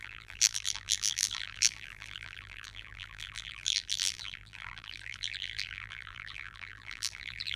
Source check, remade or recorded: remade